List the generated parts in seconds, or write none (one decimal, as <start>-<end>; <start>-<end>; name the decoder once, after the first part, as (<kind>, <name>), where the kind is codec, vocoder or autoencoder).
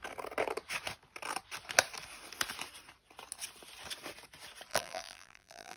4.7-5.8 (vocoder, BigVGAN v2)